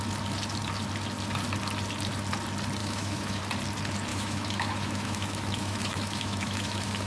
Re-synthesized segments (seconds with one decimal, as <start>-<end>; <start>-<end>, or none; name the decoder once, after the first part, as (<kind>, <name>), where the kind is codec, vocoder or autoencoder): 2.8-3.4 (autoencoder, DAC-VAE); 4.1-7.1